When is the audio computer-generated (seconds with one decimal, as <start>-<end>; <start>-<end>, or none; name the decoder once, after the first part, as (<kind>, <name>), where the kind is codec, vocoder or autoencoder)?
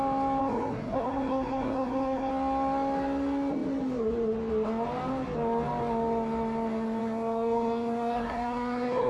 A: 0.4-2.3 (codec, SNAC); 7.0-9.1